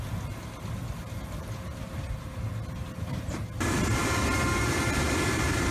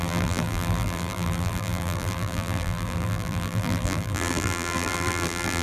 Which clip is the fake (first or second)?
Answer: second